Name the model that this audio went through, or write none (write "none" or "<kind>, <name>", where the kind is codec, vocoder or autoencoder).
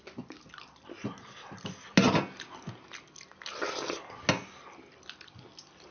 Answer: none